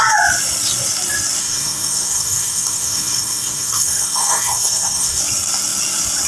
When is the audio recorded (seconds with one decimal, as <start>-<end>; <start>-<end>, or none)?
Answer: 0.0-1.4; 5.2-6.3